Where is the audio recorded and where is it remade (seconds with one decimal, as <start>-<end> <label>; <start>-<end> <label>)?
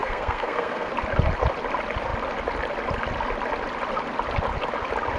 0.0-0.9 remade; 0.9-5.2 recorded